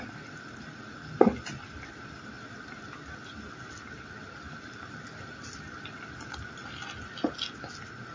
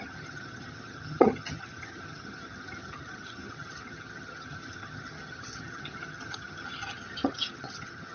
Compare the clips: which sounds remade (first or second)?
second